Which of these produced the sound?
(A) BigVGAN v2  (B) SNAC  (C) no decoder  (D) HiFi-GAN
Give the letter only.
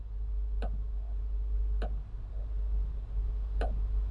C